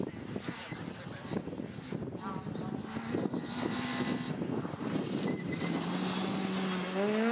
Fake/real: real